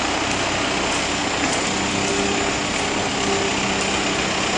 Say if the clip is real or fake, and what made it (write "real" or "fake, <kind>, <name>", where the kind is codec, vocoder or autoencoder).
real